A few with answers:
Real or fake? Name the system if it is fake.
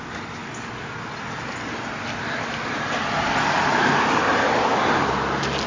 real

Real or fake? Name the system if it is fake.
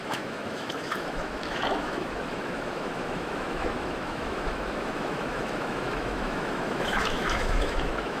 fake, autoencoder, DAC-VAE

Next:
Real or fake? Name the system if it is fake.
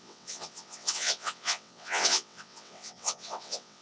fake, vocoder, WaveNeXt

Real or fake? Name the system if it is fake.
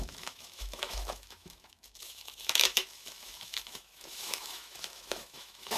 fake, autoencoder, DAC-VAE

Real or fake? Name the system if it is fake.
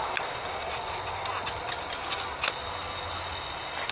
real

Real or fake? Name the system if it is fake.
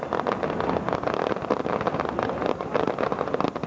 real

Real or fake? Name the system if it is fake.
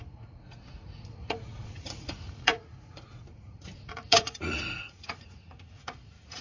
fake, vocoder, Vocos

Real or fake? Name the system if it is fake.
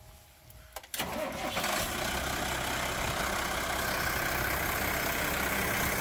real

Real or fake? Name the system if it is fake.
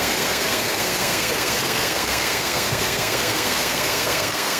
fake, codec, SNAC